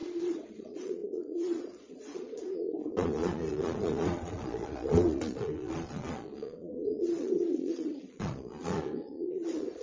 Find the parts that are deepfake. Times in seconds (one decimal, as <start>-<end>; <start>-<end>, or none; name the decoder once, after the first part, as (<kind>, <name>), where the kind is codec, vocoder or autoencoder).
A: 0.0-9.8 (vocoder, Vocos)